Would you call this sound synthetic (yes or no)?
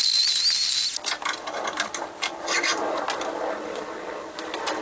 no